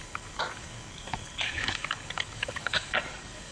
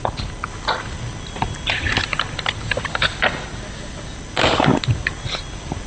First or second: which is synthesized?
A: first